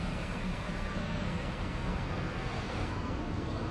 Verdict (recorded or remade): remade